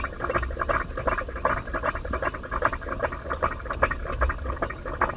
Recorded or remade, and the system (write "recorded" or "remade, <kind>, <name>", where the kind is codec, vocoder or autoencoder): recorded